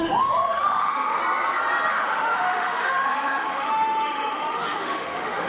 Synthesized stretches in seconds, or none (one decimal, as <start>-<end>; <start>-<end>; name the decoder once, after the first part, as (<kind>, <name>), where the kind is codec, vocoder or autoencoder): 0.0-1.2 (autoencoder, DAC-VAE); 1.9-5.5